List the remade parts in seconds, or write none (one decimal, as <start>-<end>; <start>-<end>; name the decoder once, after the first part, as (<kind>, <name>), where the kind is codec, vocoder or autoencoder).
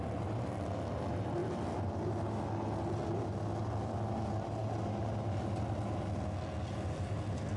none